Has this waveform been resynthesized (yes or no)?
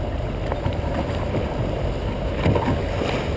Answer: no